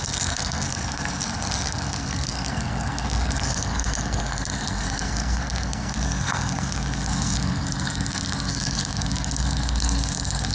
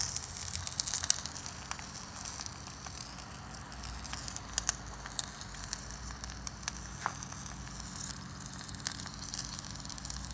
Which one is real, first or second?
second